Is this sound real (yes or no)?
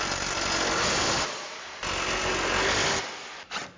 yes